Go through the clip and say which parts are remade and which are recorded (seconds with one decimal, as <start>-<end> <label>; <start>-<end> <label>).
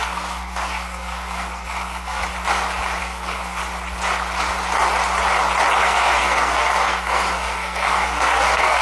0.0-2.2 remade; 2.2-3.0 recorded; 3.0-3.6 remade; 3.6-5.8 recorded; 5.8-8.8 remade